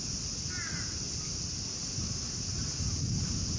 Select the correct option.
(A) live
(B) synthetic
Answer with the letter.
A